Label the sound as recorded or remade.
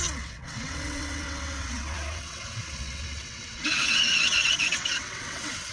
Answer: remade